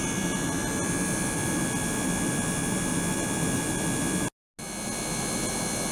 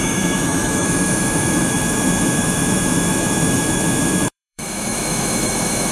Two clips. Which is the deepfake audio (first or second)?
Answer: second